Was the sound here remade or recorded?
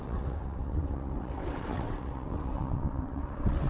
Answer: remade